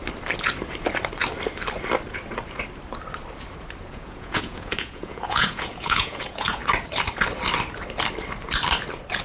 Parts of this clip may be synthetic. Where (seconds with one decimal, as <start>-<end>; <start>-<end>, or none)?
3.8-6.6